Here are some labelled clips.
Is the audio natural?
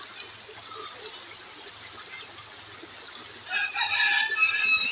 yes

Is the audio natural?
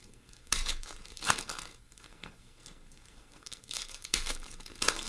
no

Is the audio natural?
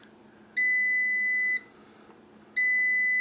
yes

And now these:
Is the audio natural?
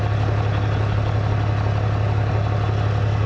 yes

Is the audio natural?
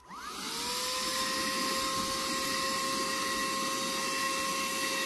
yes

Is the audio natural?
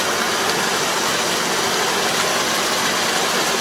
yes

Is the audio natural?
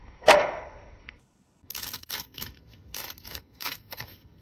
no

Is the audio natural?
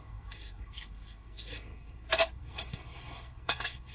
no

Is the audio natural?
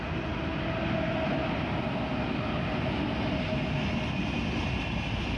yes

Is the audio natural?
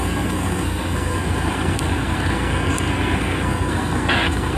no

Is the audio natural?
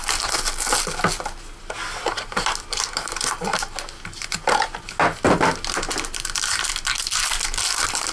yes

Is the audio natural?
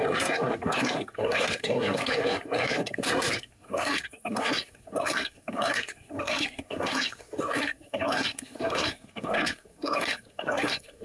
no